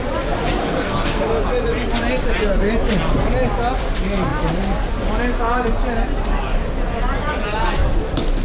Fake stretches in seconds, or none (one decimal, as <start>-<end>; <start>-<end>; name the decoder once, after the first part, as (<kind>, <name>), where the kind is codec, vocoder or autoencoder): 0.6-1.3 (codec, SNAC)